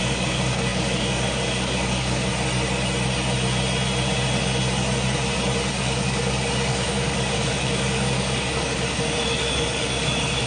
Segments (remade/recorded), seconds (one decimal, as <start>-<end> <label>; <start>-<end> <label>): 0.0-2.3 remade; 2.3-5.7 recorded; 5.7-10.5 remade